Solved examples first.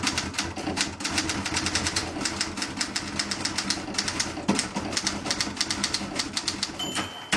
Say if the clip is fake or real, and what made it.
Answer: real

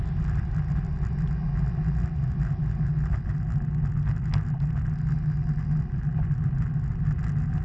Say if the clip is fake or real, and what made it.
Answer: real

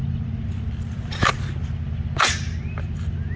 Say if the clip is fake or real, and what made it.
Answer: real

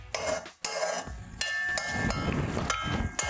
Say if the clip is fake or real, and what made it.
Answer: real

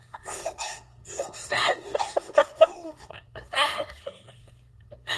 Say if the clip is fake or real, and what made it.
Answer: fake, codec, SNAC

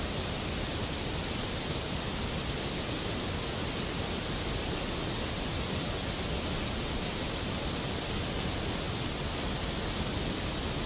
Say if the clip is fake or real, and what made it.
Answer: real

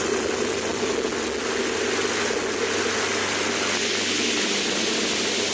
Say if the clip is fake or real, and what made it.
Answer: real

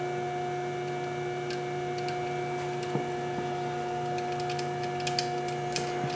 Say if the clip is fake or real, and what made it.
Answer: real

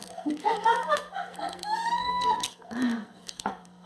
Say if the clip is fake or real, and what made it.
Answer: fake, codec, SNAC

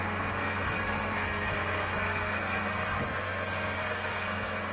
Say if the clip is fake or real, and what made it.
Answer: fake, codec, SNAC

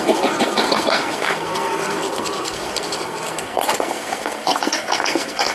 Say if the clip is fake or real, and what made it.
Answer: fake, codec, SNAC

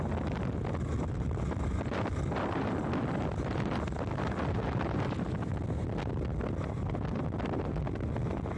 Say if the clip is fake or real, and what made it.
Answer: real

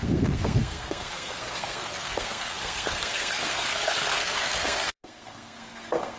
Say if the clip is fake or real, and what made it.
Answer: fake, codec, SNAC